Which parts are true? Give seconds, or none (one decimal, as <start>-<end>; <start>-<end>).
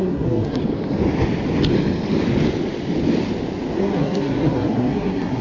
0.6-3.8